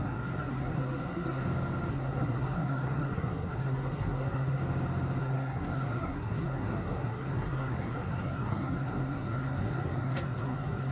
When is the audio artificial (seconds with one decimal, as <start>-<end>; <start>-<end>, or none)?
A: 0.0-1.4; 1.9-4.6; 5.2-10.9